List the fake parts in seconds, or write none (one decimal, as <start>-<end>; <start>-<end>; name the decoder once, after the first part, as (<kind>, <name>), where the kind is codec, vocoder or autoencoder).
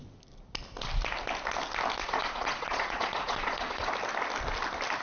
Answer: 2.0-3.9 (vocoder, Vocos)